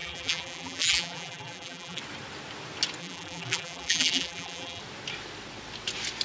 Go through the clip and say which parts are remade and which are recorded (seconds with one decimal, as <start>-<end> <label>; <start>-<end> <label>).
0.0-2.0 remade; 2.0-3.0 recorded; 3.0-4.8 remade; 4.8-6.2 recorded